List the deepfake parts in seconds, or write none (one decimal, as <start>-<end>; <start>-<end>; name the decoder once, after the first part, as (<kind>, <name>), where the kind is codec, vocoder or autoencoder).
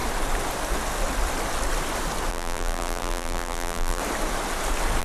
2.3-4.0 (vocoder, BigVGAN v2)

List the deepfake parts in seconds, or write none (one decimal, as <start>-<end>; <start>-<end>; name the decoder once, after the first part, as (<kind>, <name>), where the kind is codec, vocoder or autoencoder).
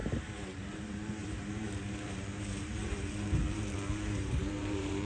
0.6-5.1 (vocoder, BigVGAN v2)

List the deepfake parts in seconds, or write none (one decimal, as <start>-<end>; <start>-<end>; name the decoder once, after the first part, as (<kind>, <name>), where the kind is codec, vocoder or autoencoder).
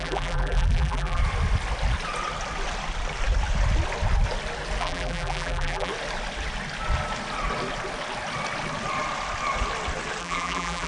0.0-1.2 (vocoder, BigVGAN v2); 4.8-5.9; 10.2-10.9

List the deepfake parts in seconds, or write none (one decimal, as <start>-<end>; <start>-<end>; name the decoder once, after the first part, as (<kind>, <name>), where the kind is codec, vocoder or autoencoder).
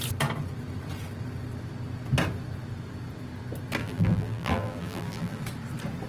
3.8-5.4 (vocoder, BigVGAN v2)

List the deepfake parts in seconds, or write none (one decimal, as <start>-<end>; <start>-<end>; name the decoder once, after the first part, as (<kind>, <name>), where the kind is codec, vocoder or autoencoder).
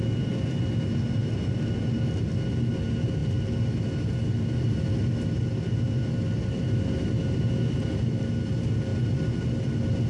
none